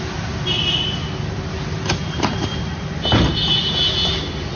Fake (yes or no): no